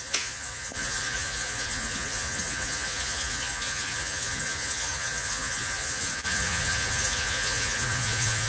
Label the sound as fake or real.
fake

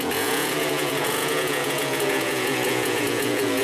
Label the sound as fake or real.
fake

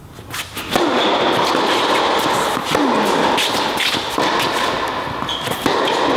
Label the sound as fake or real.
real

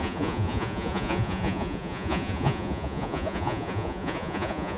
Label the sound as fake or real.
fake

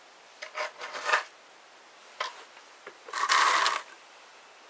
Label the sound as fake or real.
real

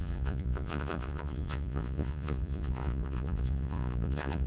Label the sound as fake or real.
fake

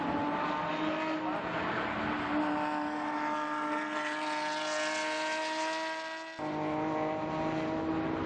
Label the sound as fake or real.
real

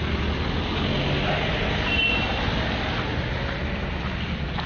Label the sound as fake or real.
real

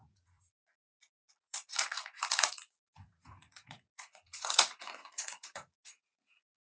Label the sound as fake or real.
fake